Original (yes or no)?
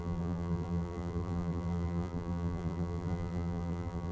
no